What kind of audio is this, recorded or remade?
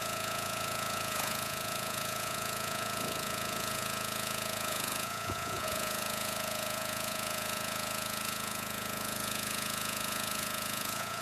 remade